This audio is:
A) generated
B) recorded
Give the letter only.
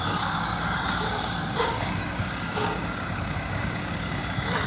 A